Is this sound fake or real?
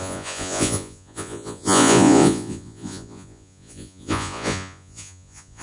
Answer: fake